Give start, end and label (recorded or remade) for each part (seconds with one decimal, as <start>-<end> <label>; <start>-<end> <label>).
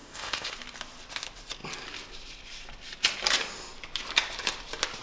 0.0-0.5 remade; 0.5-5.0 recorded